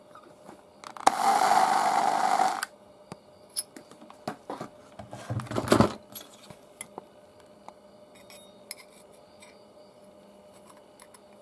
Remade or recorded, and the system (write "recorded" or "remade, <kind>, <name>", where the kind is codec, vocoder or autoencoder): recorded